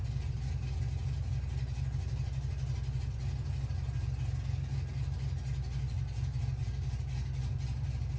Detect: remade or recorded recorded